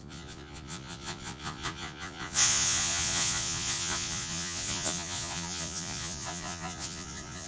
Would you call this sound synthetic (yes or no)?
yes